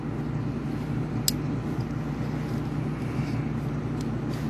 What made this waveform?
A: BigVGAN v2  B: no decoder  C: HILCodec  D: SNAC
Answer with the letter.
B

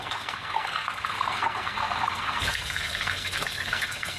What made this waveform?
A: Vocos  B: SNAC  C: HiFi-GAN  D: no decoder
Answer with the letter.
B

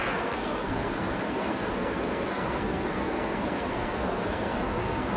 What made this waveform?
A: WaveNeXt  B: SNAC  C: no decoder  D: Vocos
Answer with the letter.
B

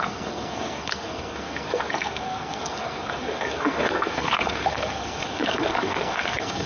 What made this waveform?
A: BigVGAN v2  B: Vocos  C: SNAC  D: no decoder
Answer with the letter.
C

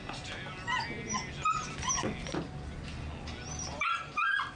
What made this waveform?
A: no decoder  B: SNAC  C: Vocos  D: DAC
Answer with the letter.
A